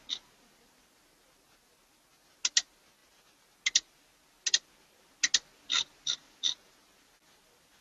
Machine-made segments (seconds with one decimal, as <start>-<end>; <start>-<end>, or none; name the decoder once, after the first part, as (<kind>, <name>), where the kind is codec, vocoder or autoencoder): none